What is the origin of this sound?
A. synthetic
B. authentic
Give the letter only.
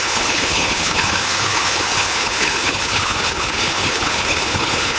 A